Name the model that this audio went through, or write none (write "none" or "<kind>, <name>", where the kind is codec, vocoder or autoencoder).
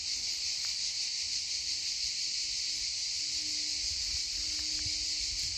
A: none